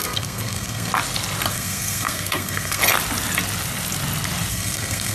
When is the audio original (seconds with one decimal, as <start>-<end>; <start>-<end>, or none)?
0.9-1.5; 2.8-4.5